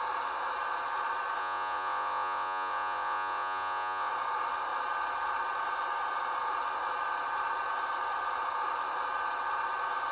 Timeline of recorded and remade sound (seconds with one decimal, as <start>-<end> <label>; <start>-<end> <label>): 0.0-1.4 recorded; 1.4-4.1 remade; 4.1-10.1 recorded